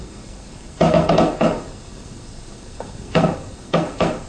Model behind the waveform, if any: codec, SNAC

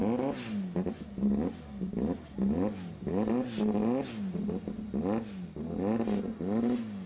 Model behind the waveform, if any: none